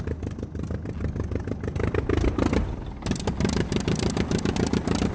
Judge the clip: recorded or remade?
recorded